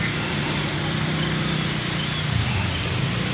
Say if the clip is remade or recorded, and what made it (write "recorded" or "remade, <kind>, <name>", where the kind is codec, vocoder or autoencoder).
recorded